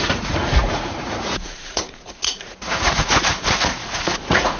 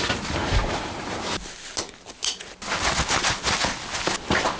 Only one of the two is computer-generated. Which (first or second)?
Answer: first